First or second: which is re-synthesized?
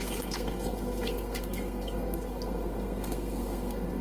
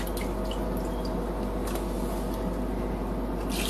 first